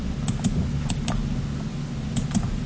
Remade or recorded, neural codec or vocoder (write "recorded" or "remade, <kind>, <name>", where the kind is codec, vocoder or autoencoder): recorded